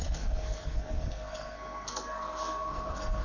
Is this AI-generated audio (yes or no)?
yes